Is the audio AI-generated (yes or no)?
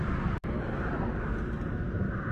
no